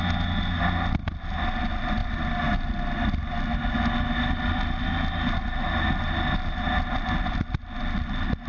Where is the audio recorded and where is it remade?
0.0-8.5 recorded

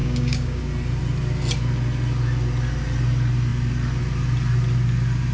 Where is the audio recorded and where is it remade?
0.0-0.6 remade; 0.6-5.3 recorded

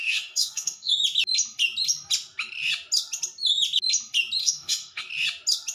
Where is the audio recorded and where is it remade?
0.0-0.9 remade; 0.9-4.4 recorded; 4.4-5.1 remade; 5.1-5.7 recorded

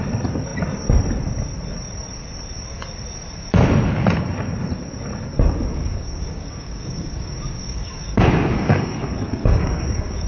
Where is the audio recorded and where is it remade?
0.0-5.7 recorded; 5.7-10.3 remade

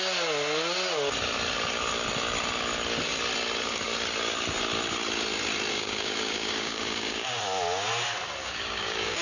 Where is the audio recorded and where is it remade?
0.0-5.7 recorded; 5.7-7.4 remade; 7.4-8.4 recorded; 8.4-9.2 remade

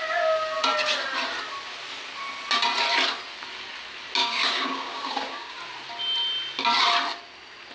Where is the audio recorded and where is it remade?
0.0-4.2 recorded; 4.2-5.6 remade; 5.6-7.7 recorded

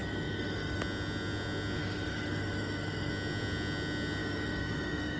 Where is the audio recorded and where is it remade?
0.0-0.8 remade; 0.8-1.8 recorded; 1.8-3.1 remade; 3.1-4.2 recorded; 4.2-5.2 remade